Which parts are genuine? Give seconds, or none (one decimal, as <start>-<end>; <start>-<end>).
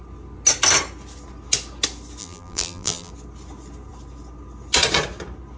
0.0-2.2; 3.1-5.6